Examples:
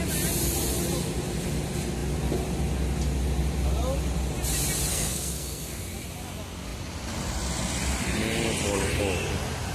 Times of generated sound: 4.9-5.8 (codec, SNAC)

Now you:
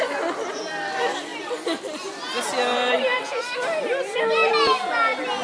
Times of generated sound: none

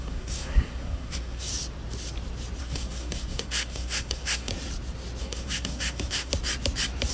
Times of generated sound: 0.0-1.5 (codec, SNAC); 2.6-4.5; 5.2-6.3

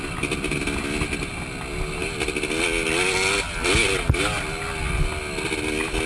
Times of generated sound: none

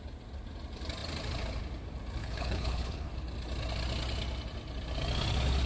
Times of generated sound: 2.2-3.1 (codec, HILCodec)

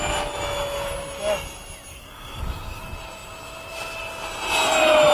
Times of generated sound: 1.9-2.8 (codec, DAC)